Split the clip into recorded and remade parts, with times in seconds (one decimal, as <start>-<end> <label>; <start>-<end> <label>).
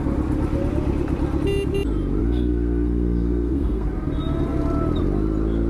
0.0-2.2 recorded; 2.2-3.9 remade; 3.9-5.7 recorded